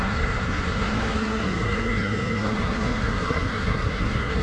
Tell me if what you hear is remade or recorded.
remade